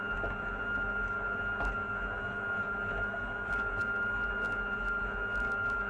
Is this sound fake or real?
real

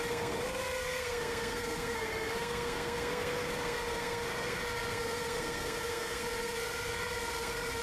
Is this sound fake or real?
fake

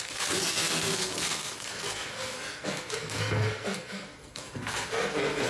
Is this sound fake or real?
fake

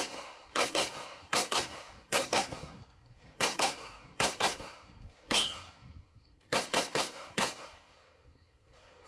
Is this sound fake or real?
fake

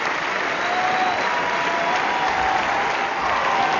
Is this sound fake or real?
real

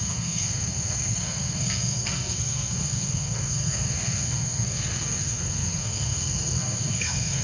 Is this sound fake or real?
fake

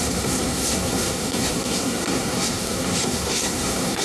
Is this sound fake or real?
fake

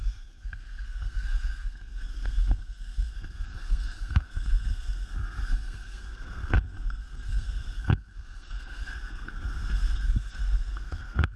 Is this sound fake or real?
fake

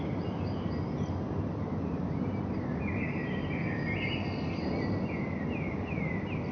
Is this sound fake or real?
real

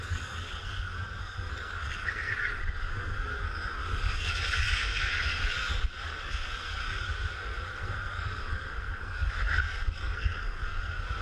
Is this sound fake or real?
fake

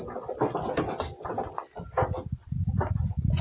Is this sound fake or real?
real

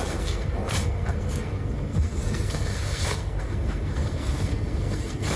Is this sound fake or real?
fake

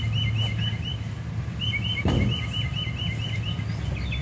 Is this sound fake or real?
real